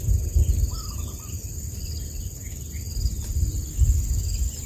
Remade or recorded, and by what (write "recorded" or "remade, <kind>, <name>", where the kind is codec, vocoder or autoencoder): recorded